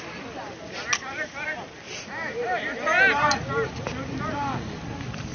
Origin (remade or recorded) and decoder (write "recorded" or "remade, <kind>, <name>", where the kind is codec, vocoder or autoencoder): recorded